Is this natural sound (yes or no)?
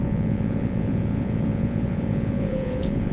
no